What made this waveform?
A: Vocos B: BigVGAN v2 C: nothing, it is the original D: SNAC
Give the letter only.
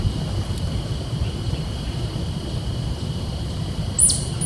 C